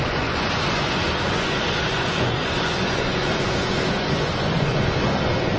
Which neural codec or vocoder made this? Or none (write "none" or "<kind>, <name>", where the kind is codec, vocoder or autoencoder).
vocoder, Vocos